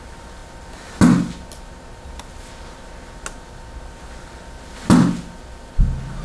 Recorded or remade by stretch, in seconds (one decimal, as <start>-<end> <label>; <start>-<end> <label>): 0.0-6.2 recorded

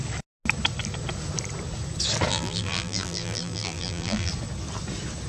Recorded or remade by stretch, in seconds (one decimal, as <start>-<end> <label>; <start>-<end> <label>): 0.0-2.3 recorded; 2.3-4.3 remade; 4.3-5.3 recorded

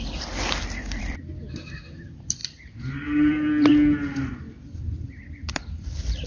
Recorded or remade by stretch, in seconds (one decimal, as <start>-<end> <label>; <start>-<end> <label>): 0.0-2.4 remade; 2.4-3.3 recorded; 3.3-3.7 remade; 3.7-5.0 recorded; 5.0-6.3 remade

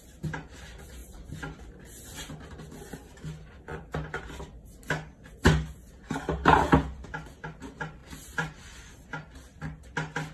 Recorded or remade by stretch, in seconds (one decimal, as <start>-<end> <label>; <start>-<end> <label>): 0.0-1.0 recorded; 1.0-1.6 remade; 1.6-3.5 recorded; 3.5-4.1 remade; 4.1-8.0 recorded; 8.0-8.9 remade; 8.9-10.3 recorded

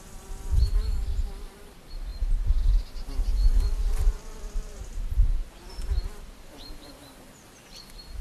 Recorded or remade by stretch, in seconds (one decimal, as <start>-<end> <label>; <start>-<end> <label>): 0.0-8.2 remade

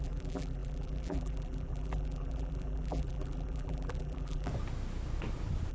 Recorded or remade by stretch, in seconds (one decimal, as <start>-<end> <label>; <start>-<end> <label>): 0.0-4.5 remade; 4.5-5.7 recorded

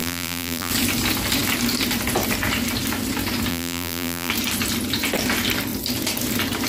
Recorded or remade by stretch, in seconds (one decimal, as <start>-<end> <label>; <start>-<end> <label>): 0.0-0.7 remade; 0.7-3.5 recorded; 3.5-4.3 remade; 4.3-6.7 recorded

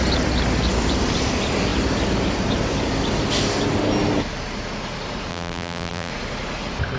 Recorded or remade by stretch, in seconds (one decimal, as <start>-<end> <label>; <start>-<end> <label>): 0.0-5.3 recorded; 5.3-6.1 remade; 6.1-7.0 recorded